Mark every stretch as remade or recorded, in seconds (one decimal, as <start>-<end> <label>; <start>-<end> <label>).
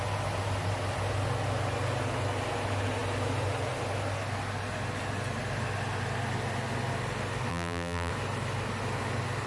0.0-7.5 recorded; 7.5-8.1 remade; 8.1-9.5 recorded